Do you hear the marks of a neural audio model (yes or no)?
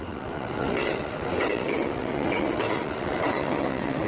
yes